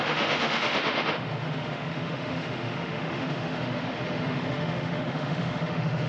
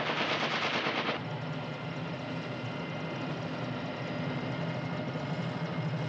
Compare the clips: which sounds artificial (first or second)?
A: first